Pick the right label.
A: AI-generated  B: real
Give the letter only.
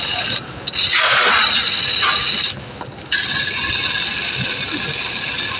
B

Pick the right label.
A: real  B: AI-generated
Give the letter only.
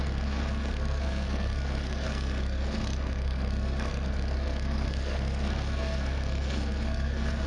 B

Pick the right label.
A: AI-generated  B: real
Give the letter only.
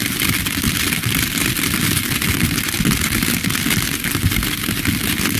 B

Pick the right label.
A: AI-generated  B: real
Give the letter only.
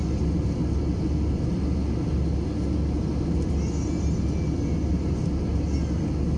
B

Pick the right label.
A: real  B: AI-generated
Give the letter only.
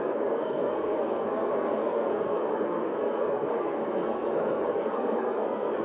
B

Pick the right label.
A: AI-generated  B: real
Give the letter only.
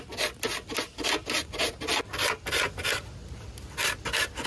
B